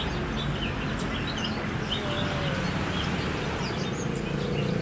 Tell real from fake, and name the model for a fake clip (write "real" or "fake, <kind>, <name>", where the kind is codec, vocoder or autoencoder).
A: real